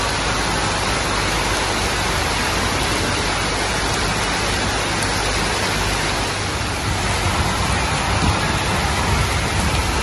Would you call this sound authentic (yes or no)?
yes